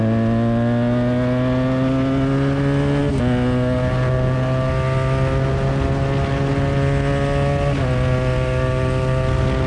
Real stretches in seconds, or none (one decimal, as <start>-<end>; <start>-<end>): 0.0-9.7